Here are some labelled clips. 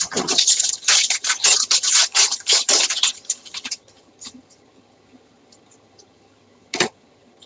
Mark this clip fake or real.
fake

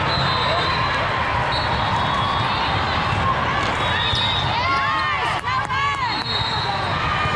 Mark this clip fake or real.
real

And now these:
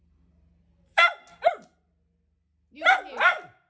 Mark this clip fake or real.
real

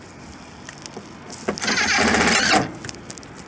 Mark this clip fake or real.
real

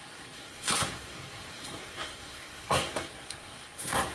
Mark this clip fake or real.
fake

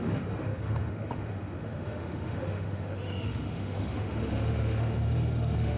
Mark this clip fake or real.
fake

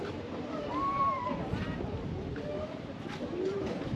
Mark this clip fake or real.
real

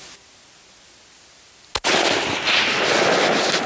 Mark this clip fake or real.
real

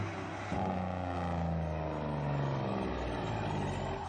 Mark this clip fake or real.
real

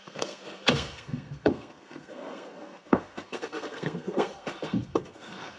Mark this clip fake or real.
fake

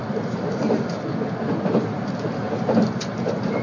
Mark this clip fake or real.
real